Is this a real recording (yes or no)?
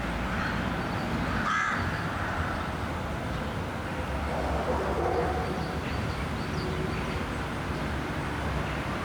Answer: no